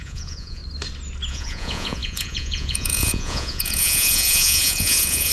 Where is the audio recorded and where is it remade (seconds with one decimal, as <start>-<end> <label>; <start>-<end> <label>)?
0.0-0.6 remade; 0.6-1.3 recorded; 1.3-5.3 remade